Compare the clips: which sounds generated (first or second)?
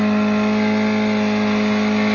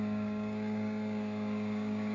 second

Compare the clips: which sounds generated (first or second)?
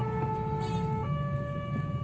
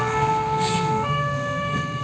second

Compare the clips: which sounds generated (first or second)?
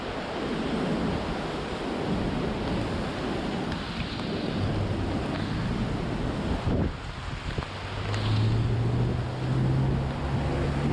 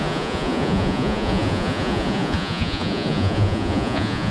second